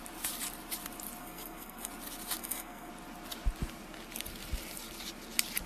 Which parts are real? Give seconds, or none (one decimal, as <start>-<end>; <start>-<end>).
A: 0.0-1.2; 1.9-2.4; 2.9-5.7